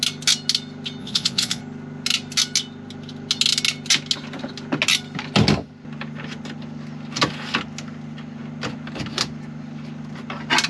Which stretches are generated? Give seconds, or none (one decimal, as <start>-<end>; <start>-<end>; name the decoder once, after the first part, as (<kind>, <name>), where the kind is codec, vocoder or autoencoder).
1.0-1.6 (vocoder, Vocos)